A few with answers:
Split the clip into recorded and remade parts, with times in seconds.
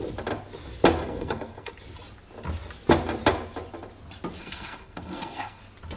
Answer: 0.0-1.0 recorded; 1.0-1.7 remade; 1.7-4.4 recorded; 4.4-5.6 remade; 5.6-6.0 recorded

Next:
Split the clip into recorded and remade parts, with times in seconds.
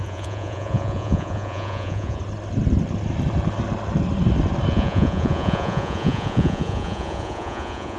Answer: 0.0-2.2 remade; 2.2-4.7 recorded; 4.7-8.0 remade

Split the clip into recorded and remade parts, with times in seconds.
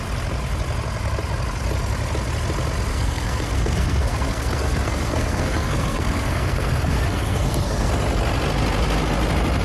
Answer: 0.0-2.9 recorded; 2.9-7.9 remade; 7.9-9.6 recorded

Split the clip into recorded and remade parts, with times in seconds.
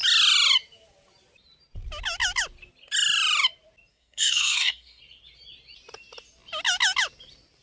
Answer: 0.0-3.9 recorded; 3.9-5.0 remade; 5.0-7.6 recorded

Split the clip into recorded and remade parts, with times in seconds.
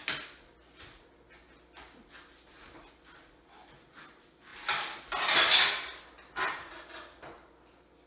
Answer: 0.0-8.1 recorded